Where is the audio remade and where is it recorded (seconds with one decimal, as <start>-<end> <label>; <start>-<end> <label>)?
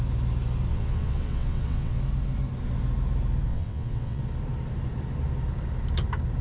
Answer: 0.0-0.7 recorded; 0.7-2.0 remade; 2.0-3.5 recorded; 3.5-4.2 remade; 4.2-6.4 recorded